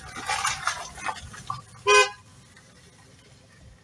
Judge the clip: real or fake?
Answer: real